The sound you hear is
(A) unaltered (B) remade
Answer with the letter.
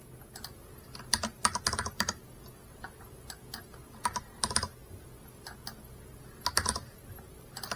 A